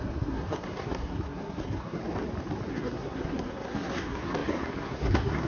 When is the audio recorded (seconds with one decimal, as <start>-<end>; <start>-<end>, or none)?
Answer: 2.0-2.7